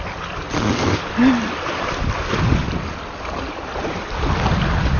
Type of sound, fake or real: real